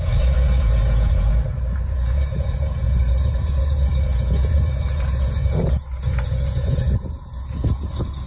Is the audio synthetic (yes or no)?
yes